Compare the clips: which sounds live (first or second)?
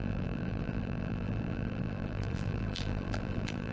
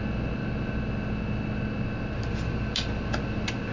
second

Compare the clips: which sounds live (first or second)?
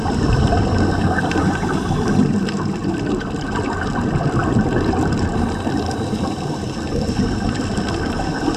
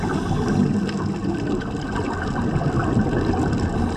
second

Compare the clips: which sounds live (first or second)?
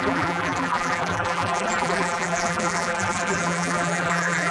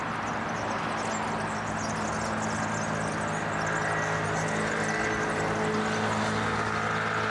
second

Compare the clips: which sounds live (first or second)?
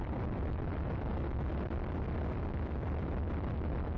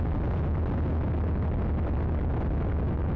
second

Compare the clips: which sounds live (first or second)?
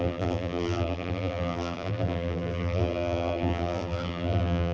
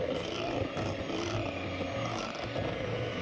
second